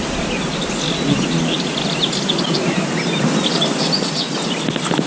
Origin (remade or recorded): recorded